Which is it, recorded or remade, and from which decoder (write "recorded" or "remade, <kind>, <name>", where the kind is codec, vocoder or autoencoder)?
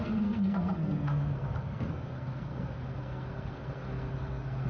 remade, codec, SNAC